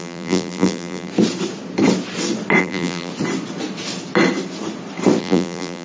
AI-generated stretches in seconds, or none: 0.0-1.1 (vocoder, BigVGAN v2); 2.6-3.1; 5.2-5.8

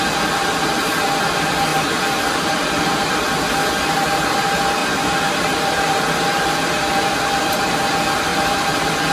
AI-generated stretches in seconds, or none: 1.7-3.1 (vocoder, BigVGAN v2); 4.8-7.0

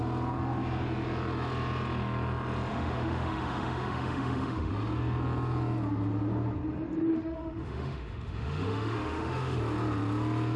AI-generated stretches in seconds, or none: 2.7-4.7 (autoencoder, DAC-VAE); 7.1-9.6

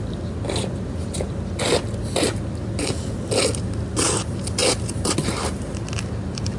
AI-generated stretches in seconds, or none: none

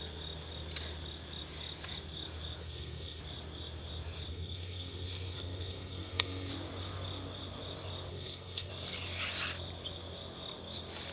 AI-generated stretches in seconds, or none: 2.6-3.2 (codec, SNAC); 4.3-6.5; 8.1-8.7